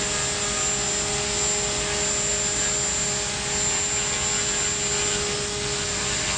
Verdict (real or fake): real